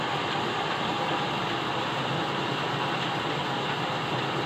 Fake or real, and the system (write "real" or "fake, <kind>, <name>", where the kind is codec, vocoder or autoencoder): real